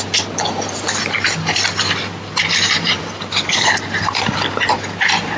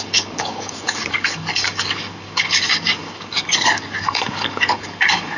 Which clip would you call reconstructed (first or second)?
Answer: second